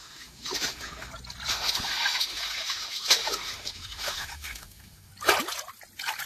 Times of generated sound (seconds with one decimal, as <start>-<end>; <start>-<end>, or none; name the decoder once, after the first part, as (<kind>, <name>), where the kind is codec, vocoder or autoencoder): 0.0-1.1 (autoencoder, DAC-VAE); 1.5-5.1